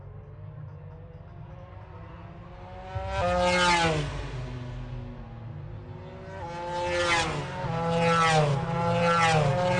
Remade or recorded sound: recorded